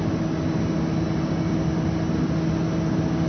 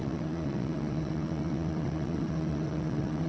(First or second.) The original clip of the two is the first